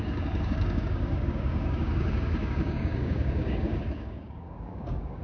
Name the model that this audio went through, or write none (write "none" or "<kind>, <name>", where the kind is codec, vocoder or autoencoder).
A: codec, DAC